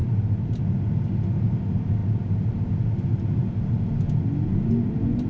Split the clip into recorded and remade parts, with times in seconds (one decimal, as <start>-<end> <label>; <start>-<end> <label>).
0.0-0.6 remade; 0.6-5.3 recorded